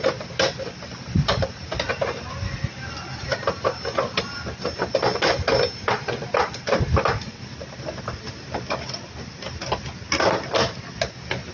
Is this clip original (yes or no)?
yes